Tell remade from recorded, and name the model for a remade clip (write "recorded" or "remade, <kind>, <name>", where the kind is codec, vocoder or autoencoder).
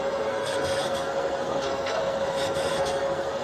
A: remade, codec, SNAC